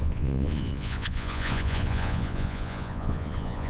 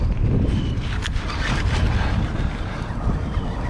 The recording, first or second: second